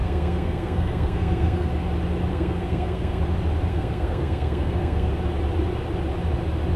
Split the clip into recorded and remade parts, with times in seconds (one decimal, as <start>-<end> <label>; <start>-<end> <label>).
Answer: 0.0-1.7 remade; 1.7-2.3 recorded; 2.3-3.2 remade; 3.2-3.7 recorded; 3.7-5.1 remade; 5.1-6.8 recorded